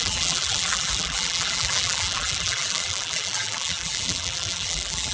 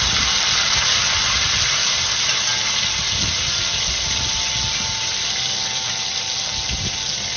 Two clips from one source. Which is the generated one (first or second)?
first